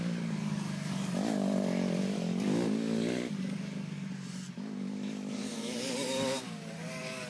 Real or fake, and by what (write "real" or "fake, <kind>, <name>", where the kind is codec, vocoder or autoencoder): fake, codec, DAC